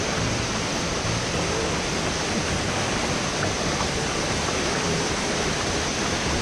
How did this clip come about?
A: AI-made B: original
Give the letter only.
A